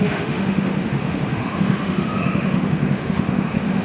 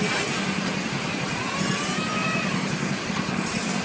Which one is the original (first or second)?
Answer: second